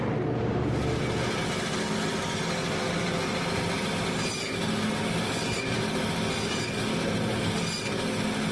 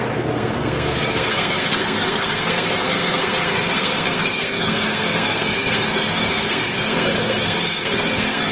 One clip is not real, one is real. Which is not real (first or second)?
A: second